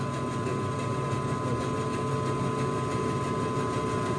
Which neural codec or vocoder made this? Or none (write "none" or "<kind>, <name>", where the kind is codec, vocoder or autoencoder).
none